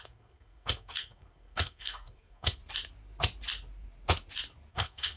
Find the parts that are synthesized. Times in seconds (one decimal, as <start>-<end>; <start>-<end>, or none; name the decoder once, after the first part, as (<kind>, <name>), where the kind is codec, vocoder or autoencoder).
0.0-2.6 (codec, SNAC); 4.7-5.2